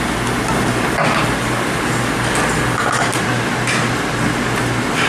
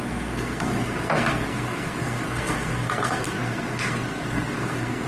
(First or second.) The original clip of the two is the first